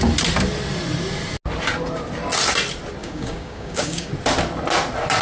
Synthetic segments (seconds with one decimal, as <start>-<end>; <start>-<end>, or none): 3.0-4.1